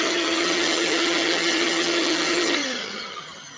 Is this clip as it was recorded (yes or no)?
no